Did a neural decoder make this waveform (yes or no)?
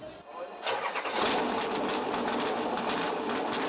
no